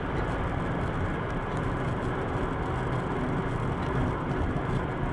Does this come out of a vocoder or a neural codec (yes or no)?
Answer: no